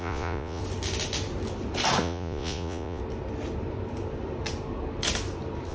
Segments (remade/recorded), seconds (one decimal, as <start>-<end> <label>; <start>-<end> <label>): 0.0-0.6 remade; 0.6-2.0 recorded; 2.0-3.0 remade; 3.0-5.7 recorded